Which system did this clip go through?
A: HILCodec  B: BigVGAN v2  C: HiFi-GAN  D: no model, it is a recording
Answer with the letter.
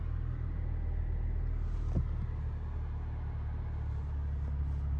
D